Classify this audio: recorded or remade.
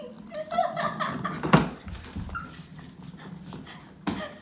recorded